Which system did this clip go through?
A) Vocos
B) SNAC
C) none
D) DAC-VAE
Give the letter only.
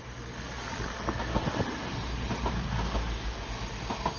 C